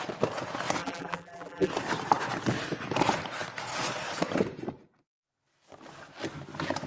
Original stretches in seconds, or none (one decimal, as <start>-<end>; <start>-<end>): 0.0-0.8; 1.7-6.9